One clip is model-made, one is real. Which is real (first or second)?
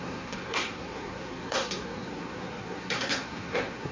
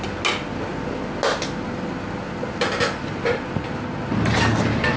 second